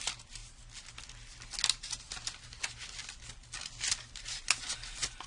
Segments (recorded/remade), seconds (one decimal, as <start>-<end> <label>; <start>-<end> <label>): 0.0-5.3 recorded